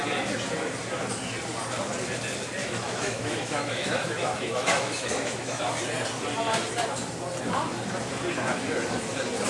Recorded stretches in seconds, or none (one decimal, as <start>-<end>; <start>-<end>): 0.0-2.6; 5.6-9.5